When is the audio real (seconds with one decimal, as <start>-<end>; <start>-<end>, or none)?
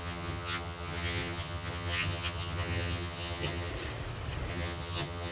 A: 3.7-4.5